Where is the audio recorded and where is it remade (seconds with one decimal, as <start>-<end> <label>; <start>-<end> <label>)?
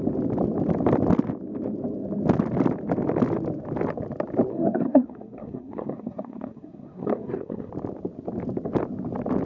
0.0-4.5 recorded; 4.5-7.7 remade; 7.7-9.5 recorded